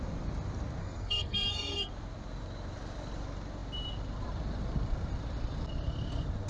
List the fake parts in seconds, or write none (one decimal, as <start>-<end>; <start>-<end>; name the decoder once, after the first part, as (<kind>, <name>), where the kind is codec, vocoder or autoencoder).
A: 0.8-1.9 (codec, SNAC)